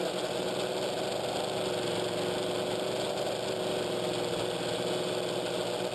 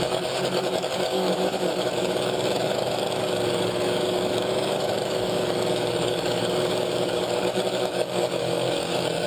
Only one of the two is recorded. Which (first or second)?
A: first